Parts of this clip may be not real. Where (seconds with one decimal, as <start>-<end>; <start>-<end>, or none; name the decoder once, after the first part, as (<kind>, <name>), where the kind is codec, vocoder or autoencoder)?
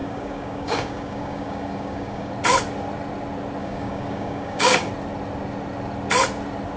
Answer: 0.0-2.3 (codec, DAC); 3.6-4.9